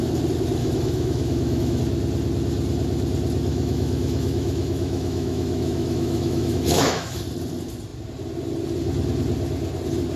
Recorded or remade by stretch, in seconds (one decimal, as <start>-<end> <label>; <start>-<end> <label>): 0.0-0.6 recorded; 0.6-1.8 remade; 1.8-3.5 recorded; 3.5-7.2 remade; 7.2-10.2 recorded